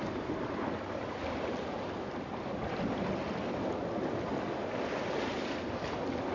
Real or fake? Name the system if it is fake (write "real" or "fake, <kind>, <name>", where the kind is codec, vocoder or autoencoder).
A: real